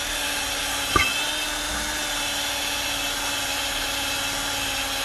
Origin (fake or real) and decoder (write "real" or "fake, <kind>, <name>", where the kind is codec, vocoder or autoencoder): real